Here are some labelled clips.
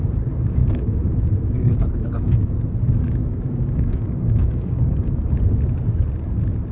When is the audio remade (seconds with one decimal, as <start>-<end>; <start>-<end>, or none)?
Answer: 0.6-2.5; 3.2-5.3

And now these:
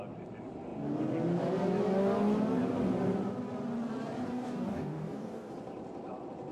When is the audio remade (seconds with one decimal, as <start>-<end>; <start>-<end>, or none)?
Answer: 4.3-5.5

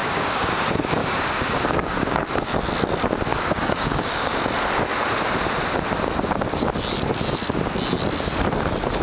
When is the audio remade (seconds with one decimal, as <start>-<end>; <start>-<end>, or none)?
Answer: 0.0-0.5; 1.0-2.6; 3.3-4.4